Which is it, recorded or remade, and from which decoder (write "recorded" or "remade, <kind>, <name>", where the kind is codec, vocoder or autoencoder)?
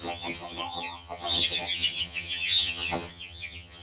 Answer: remade, vocoder, HiFi-GAN